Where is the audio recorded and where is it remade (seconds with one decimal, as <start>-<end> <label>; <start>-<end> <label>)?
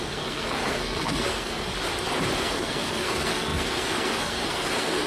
0.0-1.7 remade; 1.7-2.4 recorded; 2.4-5.1 remade